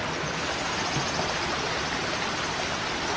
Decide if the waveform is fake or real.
real